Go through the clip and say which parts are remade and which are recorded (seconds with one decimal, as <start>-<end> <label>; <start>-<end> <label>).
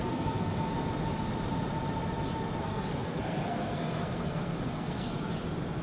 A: 0.0-0.5 remade; 0.5-2.6 recorded; 2.6-5.1 remade; 5.1-5.8 recorded